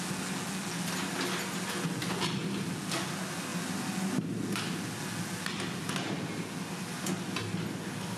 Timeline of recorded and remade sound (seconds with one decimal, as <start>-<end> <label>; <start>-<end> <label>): 0.0-8.2 recorded